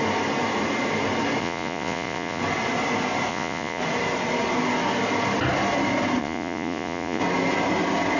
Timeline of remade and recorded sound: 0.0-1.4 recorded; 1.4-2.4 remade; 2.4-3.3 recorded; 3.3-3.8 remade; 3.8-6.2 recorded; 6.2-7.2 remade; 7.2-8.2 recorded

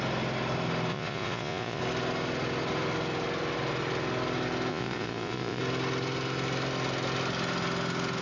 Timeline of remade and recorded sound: 0.0-0.9 recorded; 0.9-1.8 remade; 1.8-4.7 recorded; 4.7-5.6 remade; 5.6-8.2 recorded

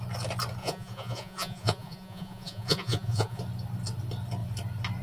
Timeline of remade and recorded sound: 0.0-0.6 recorded; 0.6-3.4 remade; 3.4-5.0 recorded

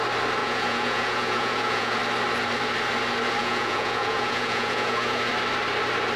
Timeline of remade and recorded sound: 0.0-0.4 recorded; 0.4-2.0 remade; 2.0-3.4 recorded; 3.4-5.3 remade; 5.3-6.2 recorded

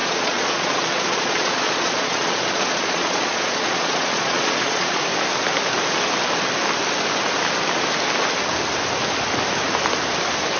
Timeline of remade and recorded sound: 0.0-5.0 remade; 5.0-10.6 recorded

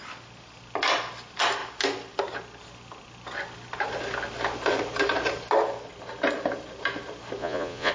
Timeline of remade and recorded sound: 0.0-7.4 recorded; 7.4-7.9 remade

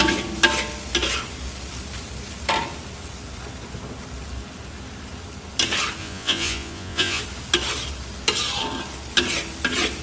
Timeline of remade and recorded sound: 0.0-6.0 recorded; 6.0-7.2 remade; 7.2-10.0 recorded

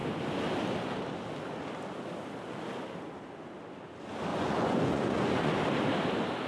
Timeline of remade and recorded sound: 0.0-4.3 recorded; 4.3-5.5 remade; 5.5-6.5 recorded